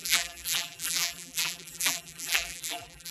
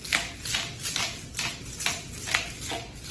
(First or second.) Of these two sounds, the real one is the second